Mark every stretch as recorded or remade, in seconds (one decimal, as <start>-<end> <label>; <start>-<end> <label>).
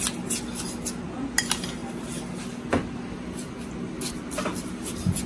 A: 0.0-5.3 recorded